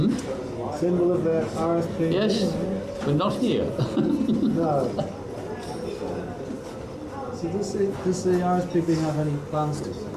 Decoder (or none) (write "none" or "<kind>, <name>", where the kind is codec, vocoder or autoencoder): none